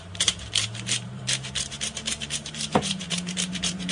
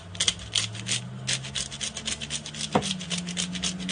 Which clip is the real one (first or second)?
second